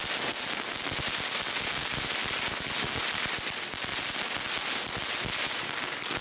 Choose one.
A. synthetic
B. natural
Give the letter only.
B